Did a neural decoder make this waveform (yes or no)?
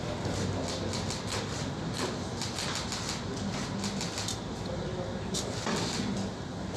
no